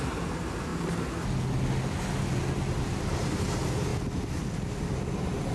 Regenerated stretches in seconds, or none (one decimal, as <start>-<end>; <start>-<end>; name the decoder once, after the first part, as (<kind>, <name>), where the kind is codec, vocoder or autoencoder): 0.0-0.7 (vocoder, BigVGAN v2); 3.1-3.9; 4.9-5.5